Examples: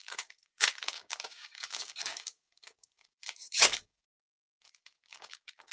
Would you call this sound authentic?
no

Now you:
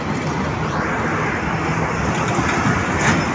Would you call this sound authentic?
yes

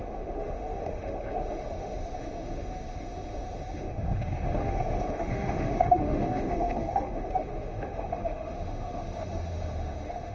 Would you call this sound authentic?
no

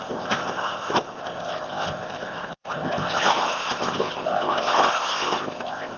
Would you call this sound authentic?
no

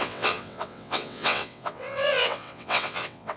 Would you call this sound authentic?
no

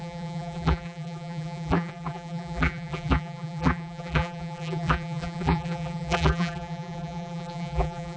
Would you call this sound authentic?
no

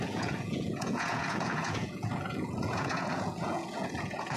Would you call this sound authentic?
no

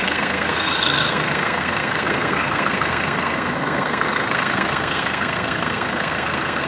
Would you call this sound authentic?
no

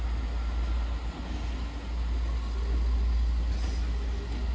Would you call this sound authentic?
yes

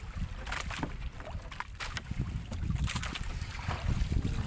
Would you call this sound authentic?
yes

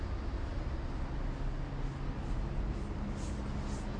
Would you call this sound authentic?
yes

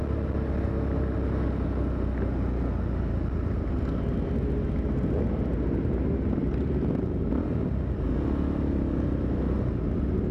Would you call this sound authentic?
yes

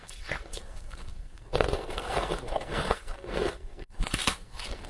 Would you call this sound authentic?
no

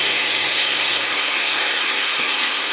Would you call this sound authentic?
no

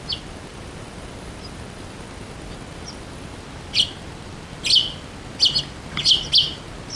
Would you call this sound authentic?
yes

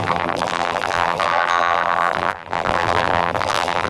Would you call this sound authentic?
no